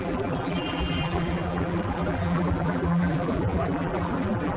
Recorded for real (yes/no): no